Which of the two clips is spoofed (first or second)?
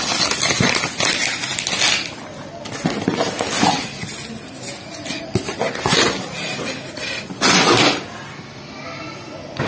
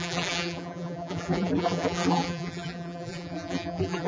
second